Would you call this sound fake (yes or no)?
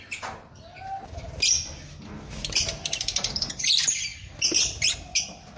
no